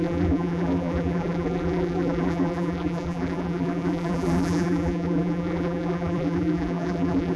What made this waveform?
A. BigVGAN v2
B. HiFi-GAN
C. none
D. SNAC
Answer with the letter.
A